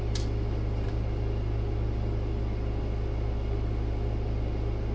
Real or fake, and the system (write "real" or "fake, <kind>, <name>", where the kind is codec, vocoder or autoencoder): real